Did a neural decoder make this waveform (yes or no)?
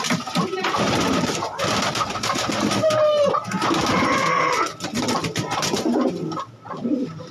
no